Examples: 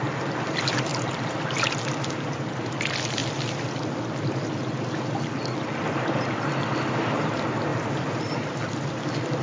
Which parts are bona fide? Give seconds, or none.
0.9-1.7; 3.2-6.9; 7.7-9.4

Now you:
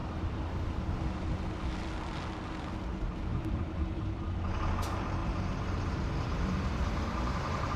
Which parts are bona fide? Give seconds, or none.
0.0-3.3; 4.0-5.2